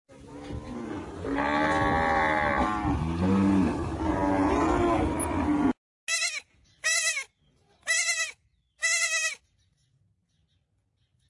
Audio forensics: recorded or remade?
recorded